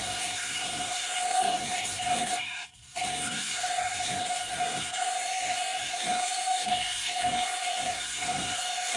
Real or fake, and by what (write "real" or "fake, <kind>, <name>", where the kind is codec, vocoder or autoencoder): fake, codec, SNAC